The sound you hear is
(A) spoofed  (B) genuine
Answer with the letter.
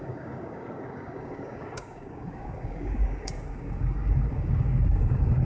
A